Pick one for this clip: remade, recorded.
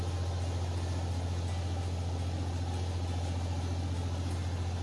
recorded